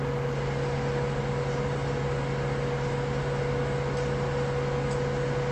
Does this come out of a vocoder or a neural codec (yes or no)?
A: no